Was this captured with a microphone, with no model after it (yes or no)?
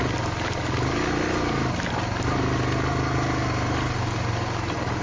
yes